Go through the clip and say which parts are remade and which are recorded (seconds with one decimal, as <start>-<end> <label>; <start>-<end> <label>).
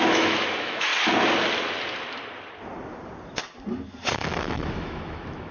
0.0-0.9 remade; 0.9-4.1 recorded; 4.1-5.5 remade